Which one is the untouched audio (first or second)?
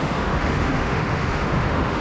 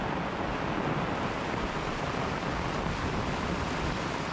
second